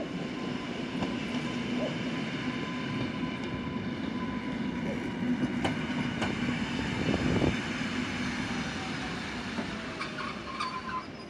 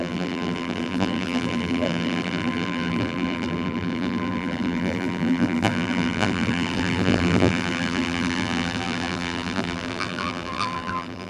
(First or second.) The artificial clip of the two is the second